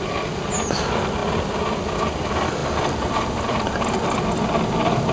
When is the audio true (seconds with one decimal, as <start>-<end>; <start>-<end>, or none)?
0.0-5.1